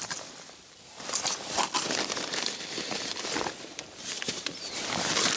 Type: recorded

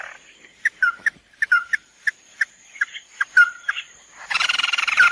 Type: remade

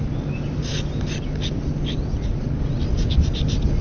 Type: recorded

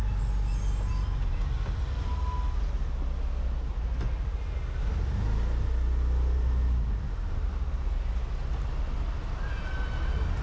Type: recorded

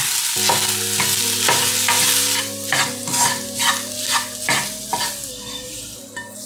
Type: recorded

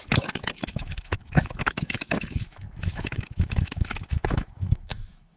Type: remade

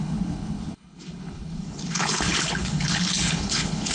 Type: remade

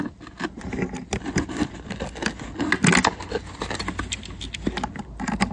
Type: recorded